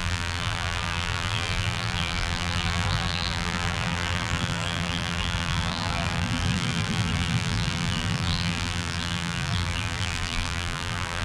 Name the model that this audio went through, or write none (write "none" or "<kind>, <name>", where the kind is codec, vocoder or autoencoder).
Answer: vocoder, BigVGAN v2